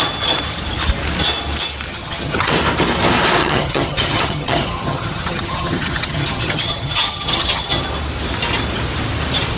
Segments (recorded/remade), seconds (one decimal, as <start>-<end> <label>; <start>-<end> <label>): 0.0-1.9 recorded; 1.9-2.5 remade; 2.5-3.4 recorded; 3.4-7.8 remade; 7.8-9.6 recorded